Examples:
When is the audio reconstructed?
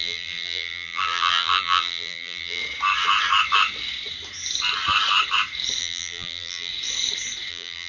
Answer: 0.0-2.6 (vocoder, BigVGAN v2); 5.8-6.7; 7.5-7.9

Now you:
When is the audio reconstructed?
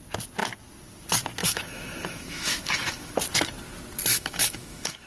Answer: 1.4-3.1 (autoencoder, DAC-VAE); 4.1-5.1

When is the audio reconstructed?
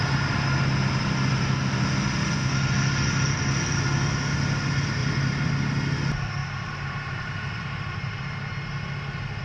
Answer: 5.0-5.5 (vocoder, BigVGAN v2); 6.4-8.5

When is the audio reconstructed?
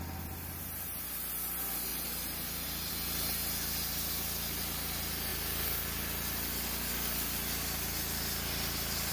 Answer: 1.9-2.9 (vocoder, BigVGAN v2)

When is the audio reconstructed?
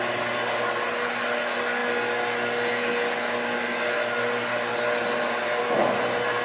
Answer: none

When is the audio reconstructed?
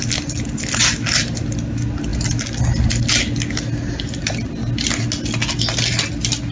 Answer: none